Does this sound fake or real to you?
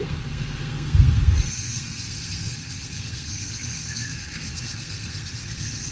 fake